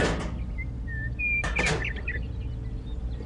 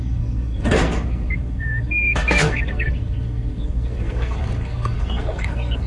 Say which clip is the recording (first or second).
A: first